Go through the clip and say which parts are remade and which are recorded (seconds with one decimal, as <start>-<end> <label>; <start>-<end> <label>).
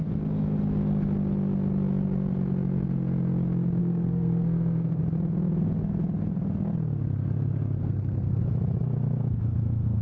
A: 0.0-3.8 recorded; 3.8-5.0 remade; 5.0-7.8 recorded; 7.8-8.4 remade; 8.4-10.0 recorded